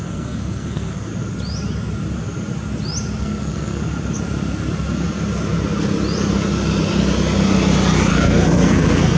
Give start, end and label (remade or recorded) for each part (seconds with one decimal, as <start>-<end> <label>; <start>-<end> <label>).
0.0-1.1 remade; 1.1-3.2 recorded; 3.2-3.8 remade; 3.8-8.1 recorded; 8.1-9.2 remade